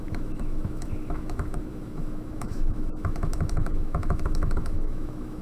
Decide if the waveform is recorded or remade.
remade